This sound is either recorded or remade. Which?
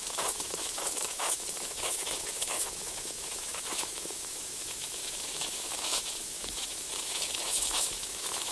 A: remade